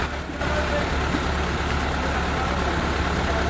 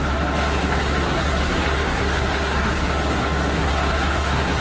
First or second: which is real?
first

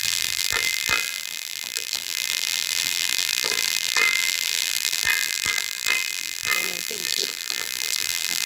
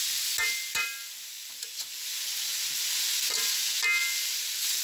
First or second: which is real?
second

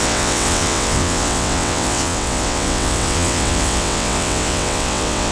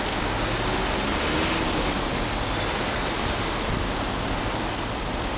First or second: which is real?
second